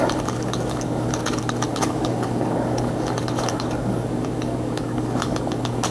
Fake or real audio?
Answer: fake